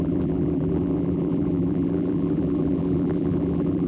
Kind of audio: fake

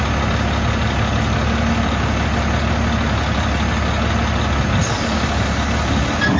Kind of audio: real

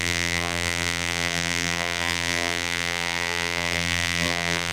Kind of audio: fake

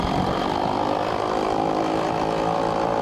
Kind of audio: fake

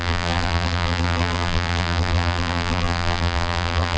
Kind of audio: fake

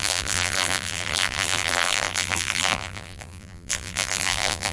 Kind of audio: fake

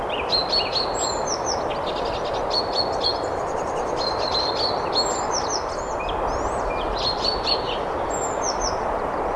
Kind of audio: real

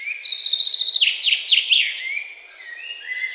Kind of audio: real